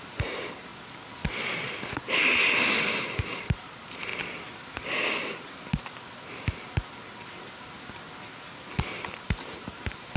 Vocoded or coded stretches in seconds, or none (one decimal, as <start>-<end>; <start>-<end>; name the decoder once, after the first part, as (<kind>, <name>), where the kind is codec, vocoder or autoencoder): 0.0-0.7 (vocoder, BigVGAN v2); 3.0-4.1; 9.1-10.2